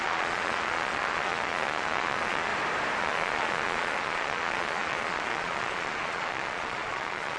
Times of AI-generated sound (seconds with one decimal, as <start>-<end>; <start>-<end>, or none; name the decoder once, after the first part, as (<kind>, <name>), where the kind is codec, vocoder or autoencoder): 0.0-2.5 (vocoder, Vocos); 3.0-7.4